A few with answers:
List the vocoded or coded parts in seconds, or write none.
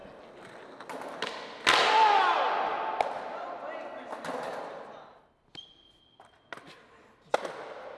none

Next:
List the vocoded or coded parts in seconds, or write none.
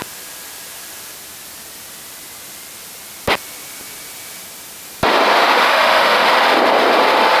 5.3-6.3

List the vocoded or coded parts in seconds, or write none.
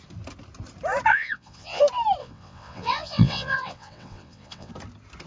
1.1-1.8; 2.2-4.7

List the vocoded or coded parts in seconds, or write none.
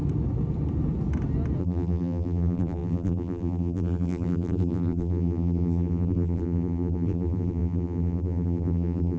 1.6-9.2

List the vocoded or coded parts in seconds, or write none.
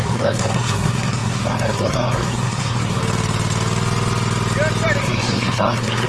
0.0-3.0; 5.0-6.1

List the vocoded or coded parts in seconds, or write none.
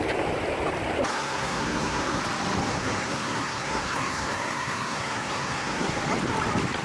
1.1-2.2; 2.7-6.0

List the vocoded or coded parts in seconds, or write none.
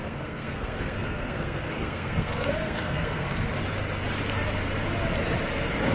0.0-3.5